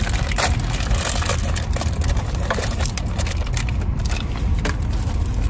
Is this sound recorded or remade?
recorded